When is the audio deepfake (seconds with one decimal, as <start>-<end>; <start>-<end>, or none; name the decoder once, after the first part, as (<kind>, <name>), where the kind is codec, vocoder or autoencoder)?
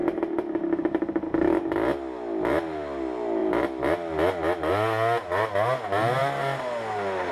0.0-1.0 (vocoder, BigVGAN v2)